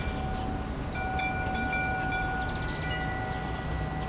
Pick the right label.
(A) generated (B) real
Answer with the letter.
B